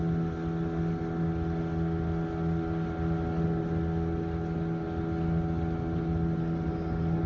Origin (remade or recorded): recorded